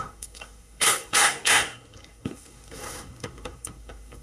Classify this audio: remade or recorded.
remade